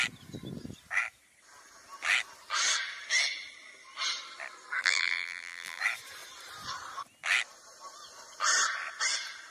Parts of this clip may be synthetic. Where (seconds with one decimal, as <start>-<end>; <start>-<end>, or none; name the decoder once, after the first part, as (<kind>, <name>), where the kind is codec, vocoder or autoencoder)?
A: 4.8-5.8 (vocoder, BigVGAN v2)